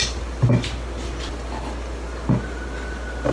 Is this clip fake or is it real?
real